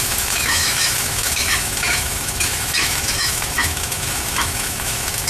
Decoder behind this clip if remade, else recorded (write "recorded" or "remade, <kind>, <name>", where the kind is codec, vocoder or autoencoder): remade, autoencoder, DAC-VAE